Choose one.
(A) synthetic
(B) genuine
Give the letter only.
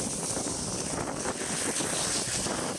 B